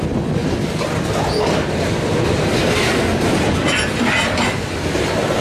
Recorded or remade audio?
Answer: recorded